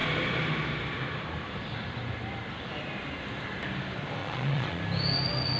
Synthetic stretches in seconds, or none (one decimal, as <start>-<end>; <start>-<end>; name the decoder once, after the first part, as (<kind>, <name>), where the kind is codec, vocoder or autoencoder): 4.2-4.8 (vocoder, Vocos)

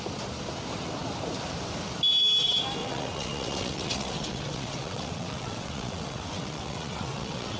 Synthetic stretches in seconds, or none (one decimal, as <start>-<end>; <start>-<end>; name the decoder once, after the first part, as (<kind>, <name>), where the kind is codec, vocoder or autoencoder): 2.8-7.6 (vocoder, WaveNeXt)

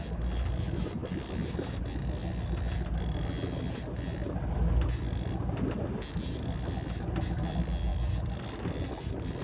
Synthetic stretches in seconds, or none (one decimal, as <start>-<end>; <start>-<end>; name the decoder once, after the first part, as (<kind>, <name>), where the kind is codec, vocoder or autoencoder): none